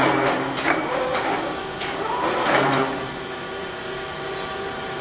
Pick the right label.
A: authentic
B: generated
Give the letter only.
B